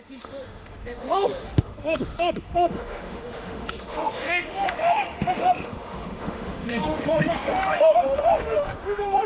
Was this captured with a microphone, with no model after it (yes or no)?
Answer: no